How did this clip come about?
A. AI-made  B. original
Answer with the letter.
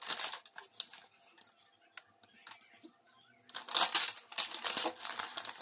B